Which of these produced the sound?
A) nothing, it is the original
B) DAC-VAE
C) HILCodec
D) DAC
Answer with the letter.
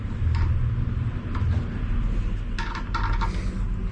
A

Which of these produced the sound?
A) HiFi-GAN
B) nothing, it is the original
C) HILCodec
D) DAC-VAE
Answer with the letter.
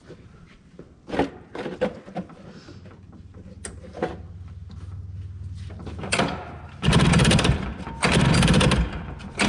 B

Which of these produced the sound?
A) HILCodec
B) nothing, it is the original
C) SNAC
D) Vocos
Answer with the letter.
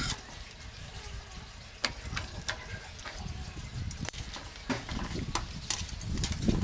B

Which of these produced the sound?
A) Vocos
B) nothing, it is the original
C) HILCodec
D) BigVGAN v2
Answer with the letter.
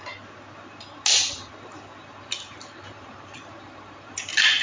B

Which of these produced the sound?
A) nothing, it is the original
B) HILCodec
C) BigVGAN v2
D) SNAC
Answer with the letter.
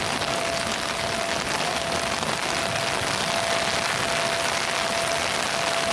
A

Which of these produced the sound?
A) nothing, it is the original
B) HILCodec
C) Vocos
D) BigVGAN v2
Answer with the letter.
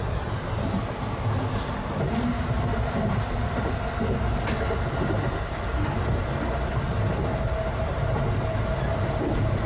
A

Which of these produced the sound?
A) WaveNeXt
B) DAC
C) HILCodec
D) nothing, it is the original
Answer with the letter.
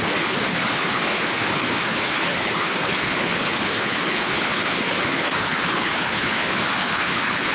C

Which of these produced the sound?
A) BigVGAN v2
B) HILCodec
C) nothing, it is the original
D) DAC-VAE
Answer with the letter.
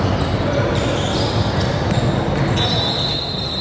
C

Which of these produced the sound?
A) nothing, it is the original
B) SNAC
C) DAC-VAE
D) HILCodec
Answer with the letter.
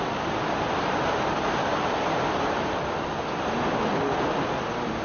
A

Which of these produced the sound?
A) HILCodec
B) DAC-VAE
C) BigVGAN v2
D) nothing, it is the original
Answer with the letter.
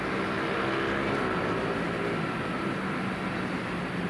D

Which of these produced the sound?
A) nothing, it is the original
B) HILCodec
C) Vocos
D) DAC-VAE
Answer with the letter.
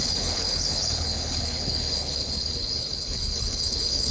B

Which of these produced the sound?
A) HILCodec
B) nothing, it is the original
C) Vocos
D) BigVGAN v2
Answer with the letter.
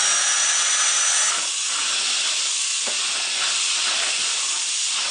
B